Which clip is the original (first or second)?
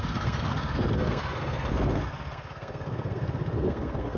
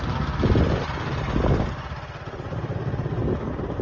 second